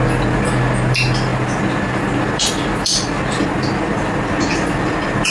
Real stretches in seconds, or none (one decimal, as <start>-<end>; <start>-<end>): 0.0-5.3